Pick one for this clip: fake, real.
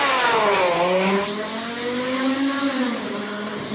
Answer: real